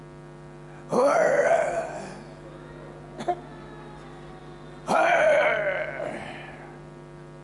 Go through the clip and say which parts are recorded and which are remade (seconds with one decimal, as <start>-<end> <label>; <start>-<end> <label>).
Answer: 0.0-7.4 recorded